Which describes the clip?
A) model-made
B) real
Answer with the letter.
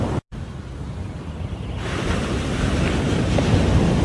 B